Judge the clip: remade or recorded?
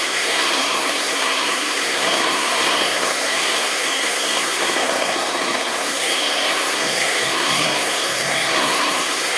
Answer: remade